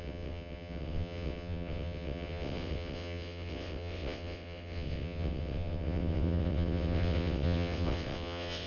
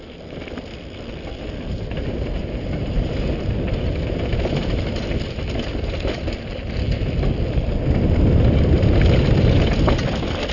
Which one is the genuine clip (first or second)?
second